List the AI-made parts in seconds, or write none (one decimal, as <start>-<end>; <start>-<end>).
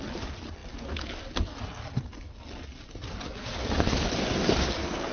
none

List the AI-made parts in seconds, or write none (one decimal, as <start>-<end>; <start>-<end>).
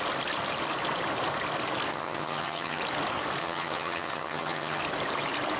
1.9-2.8; 3.4-4.8